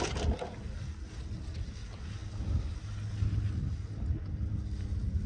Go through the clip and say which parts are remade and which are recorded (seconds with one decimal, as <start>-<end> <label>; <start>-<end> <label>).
0.0-5.3 recorded